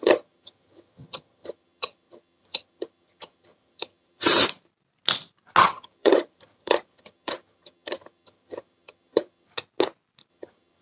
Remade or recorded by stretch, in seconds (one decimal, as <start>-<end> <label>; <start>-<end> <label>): 0.0-4.3 remade; 4.3-5.6 recorded; 5.6-9.5 remade; 9.5-10.3 recorded; 10.3-10.8 remade